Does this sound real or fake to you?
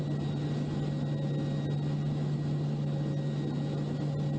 real